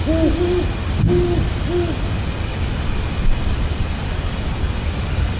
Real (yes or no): yes